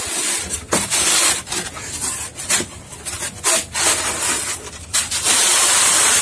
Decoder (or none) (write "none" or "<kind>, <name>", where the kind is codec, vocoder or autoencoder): none